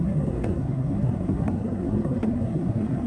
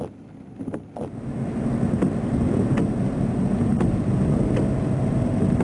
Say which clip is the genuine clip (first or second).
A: second